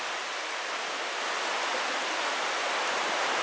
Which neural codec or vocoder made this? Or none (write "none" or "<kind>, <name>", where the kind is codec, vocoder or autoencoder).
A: none